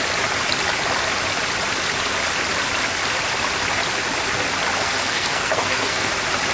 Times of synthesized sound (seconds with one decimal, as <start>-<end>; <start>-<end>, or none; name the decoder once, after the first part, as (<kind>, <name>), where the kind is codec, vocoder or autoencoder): 4.8-6.1 (codec, SNAC)